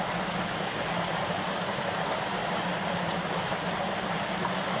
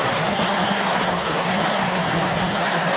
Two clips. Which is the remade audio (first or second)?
second